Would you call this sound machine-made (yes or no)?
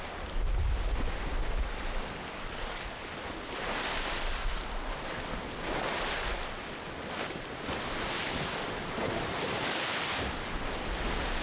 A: no